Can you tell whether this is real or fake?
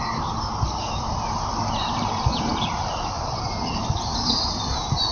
real